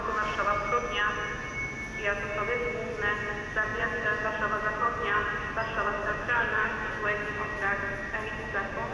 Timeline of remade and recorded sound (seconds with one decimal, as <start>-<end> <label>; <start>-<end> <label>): 0.0-6.0 recorded; 6.0-6.9 remade; 6.9-8.9 recorded